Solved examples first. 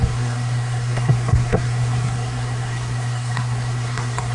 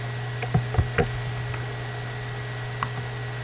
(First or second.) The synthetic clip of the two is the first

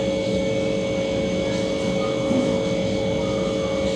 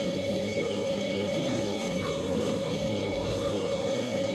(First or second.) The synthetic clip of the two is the second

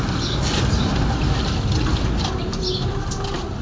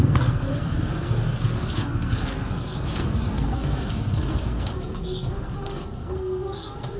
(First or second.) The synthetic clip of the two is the second